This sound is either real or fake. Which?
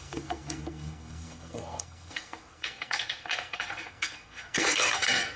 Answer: fake